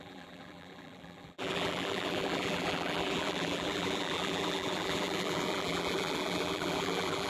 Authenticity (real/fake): fake